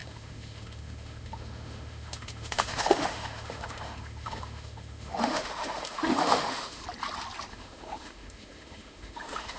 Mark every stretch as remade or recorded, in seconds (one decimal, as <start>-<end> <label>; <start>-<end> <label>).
0.0-6.8 remade; 6.8-7.5 recorded; 7.5-9.6 remade